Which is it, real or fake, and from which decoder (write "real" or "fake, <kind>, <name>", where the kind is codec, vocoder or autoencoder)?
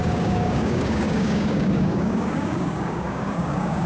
fake, codec, DAC